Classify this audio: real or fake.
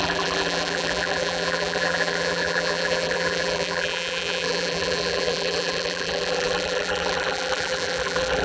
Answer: fake